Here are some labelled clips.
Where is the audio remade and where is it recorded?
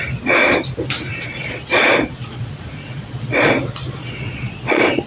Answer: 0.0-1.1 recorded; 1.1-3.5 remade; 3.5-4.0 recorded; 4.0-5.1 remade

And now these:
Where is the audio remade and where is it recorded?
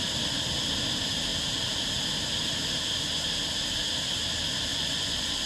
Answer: 0.0-4.7 recorded; 4.7-5.5 remade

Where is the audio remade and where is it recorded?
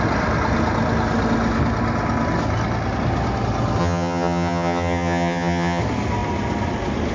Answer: 0.0-3.8 recorded; 3.8-5.8 remade; 5.8-7.1 recorded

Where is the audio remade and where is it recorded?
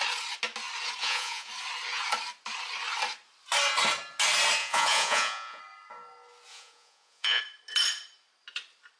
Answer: 0.0-1.0 recorded; 1.0-1.5 remade; 1.5-4.6 recorded; 4.6-5.6 remade; 5.6-6.5 recorded; 6.5-7.4 remade; 7.4-9.0 recorded